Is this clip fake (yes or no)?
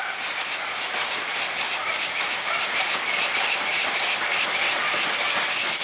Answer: no